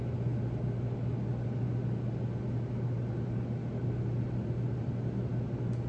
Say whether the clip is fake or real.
real